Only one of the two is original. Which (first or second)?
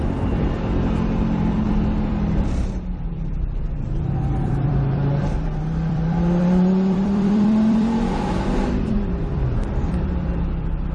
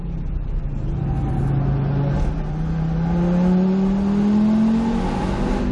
second